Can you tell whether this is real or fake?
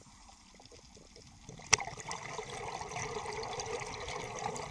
real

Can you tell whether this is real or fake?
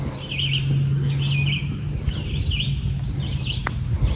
real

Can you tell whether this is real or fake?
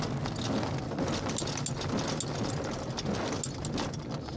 real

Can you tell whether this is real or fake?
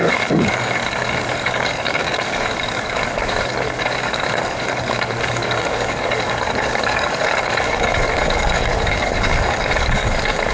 fake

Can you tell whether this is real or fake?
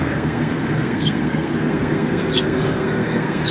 fake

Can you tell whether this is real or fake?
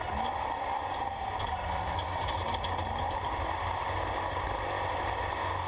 real